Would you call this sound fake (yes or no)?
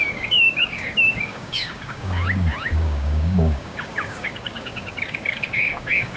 yes